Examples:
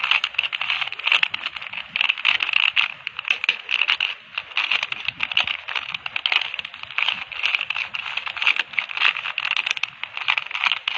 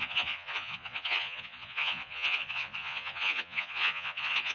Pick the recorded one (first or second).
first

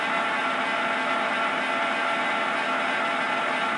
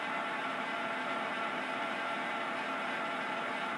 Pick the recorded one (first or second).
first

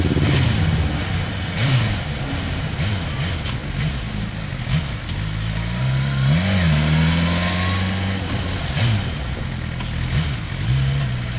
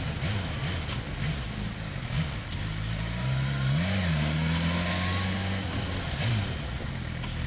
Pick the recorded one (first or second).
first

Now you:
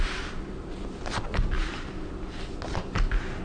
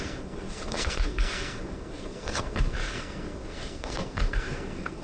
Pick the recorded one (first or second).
first